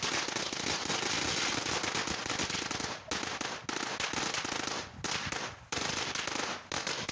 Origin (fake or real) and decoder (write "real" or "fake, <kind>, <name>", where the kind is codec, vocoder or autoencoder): real